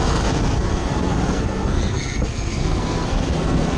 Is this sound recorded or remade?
remade